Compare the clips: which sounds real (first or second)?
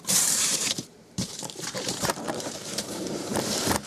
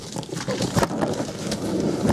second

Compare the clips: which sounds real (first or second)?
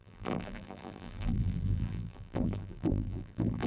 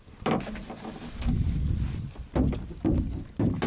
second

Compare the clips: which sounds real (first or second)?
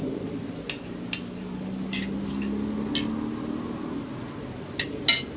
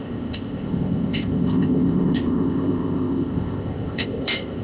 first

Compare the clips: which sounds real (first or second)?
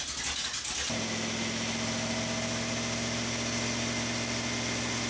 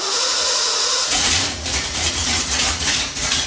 first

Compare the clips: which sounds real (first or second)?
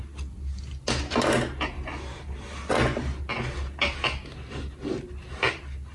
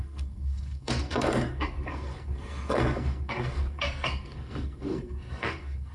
first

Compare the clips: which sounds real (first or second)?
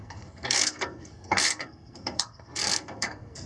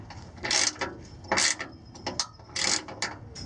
second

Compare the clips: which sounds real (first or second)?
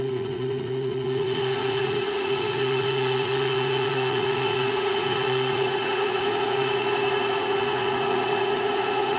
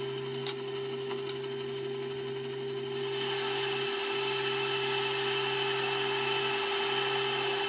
second